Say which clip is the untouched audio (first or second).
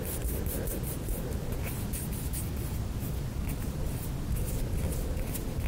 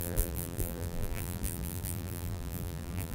first